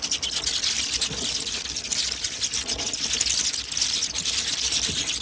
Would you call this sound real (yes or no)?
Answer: yes